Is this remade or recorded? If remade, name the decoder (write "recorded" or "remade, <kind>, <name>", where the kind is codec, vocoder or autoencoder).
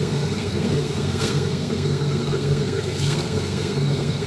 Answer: remade, codec, SNAC